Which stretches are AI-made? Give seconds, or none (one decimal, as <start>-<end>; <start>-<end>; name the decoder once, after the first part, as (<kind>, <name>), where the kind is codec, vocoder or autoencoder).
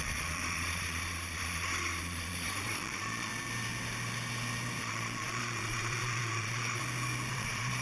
0.0-3.3 (vocoder, Vocos); 4.8-6.8; 7.3-7.8